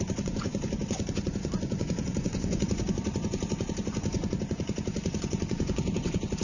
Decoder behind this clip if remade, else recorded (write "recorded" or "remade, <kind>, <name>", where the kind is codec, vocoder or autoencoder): remade, vocoder, Vocos